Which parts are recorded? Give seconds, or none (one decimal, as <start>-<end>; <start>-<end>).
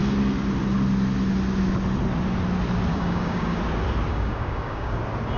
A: 0.0-2.9; 3.6-4.1; 5.0-5.4